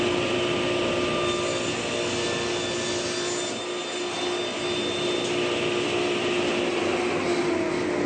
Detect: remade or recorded recorded